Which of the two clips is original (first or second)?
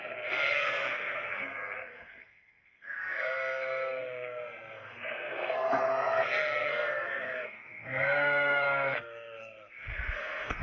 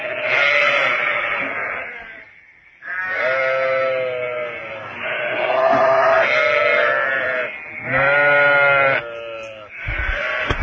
second